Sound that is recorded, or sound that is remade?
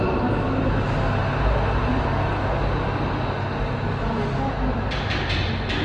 recorded